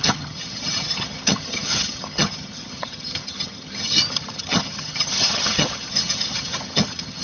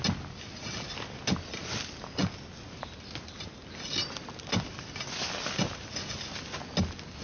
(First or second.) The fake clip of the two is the first